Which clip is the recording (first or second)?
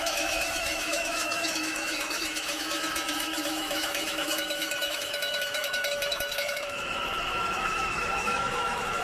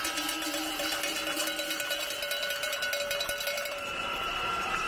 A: second